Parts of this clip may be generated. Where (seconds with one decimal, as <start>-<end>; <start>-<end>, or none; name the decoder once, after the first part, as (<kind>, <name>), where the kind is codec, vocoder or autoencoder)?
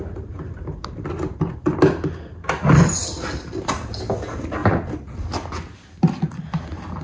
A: none